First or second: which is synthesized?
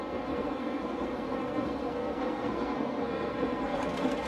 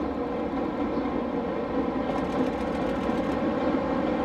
first